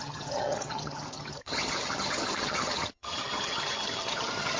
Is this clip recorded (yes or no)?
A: no